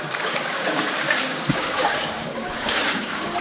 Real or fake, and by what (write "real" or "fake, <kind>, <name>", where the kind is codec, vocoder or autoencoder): fake, codec, DAC